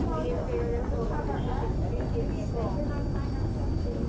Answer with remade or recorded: recorded